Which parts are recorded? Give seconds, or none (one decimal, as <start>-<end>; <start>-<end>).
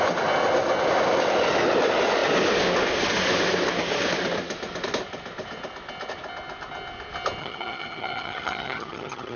0.0-7.4